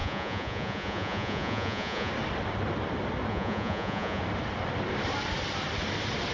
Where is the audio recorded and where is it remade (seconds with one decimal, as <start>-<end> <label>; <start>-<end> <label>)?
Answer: 0.0-2.1 remade; 2.1-3.3 recorded; 3.3-4.2 remade; 4.2-6.3 recorded